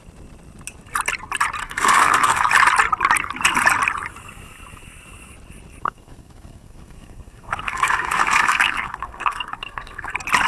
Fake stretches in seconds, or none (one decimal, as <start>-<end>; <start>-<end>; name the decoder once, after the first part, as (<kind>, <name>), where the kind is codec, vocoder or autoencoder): 1.6-2.5 (codec, SNAC); 5.8-10.1